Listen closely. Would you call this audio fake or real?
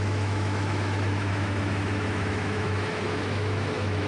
fake